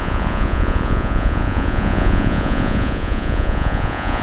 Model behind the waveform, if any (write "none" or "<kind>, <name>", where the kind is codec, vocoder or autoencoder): vocoder, Vocos